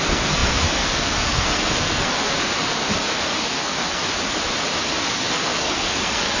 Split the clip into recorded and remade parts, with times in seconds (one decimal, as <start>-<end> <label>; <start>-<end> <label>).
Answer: 0.0-4.0 remade; 4.0-5.0 recorded; 5.0-6.4 remade

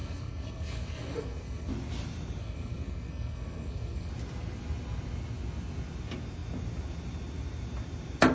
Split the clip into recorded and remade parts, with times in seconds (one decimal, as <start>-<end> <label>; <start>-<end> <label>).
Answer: 0.0-1.7 remade; 1.7-2.4 recorded; 2.4-4.1 remade; 4.1-8.3 recorded

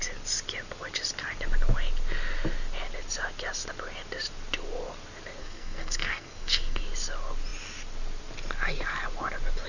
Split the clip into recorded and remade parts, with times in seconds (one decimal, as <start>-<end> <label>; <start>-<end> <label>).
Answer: 0.0-5.4 recorded; 5.4-6.8 remade; 6.8-9.7 recorded

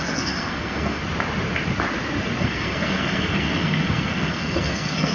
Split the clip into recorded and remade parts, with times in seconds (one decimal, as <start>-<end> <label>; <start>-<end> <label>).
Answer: 0.0-1.0 remade; 1.0-2.4 recorded; 2.4-5.1 remade

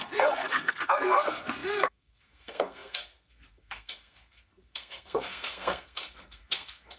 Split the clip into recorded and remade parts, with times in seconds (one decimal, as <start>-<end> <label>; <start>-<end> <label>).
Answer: 0.0-7.0 remade

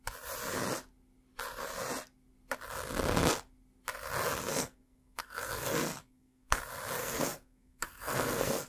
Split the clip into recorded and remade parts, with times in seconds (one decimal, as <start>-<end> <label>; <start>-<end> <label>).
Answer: 0.0-4.5 recorded; 4.5-6.6 remade; 6.6-7.0 recorded; 7.0-8.7 remade

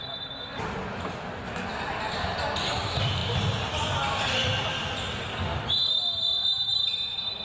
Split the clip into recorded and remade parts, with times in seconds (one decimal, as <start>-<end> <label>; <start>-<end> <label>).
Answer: 0.0-7.4 recorded